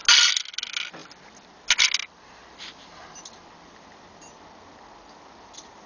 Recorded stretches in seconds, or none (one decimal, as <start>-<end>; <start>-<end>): 0.0-5.9